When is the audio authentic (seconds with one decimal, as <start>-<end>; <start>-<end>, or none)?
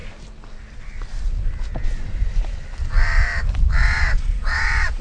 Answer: 0.0-3.8